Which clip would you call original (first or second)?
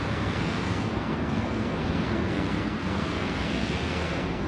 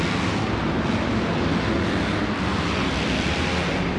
second